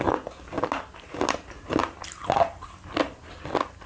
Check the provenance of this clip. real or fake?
real